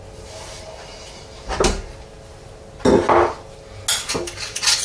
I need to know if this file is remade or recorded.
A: recorded